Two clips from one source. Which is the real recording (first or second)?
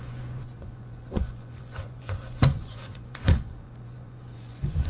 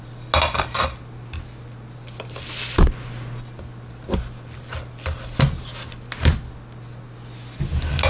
second